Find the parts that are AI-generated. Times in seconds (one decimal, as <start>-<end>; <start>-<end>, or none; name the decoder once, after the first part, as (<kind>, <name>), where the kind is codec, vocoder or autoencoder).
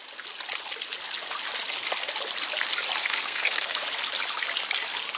3.0-3.8 (codec, SNAC)